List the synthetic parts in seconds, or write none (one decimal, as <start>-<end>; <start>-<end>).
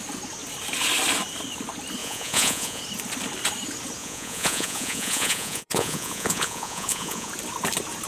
2.0-2.8; 4.0-7.3